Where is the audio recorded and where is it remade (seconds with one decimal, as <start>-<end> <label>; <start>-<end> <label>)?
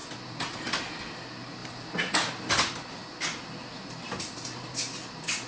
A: 0.0-5.5 recorded